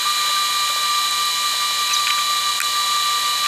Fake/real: real